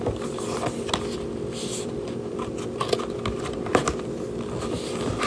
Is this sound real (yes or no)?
yes